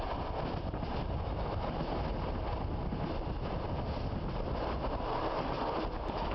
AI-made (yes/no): no